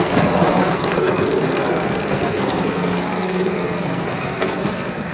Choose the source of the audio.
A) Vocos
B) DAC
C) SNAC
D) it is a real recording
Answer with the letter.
C